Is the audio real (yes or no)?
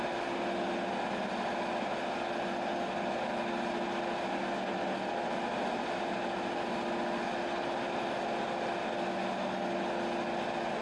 yes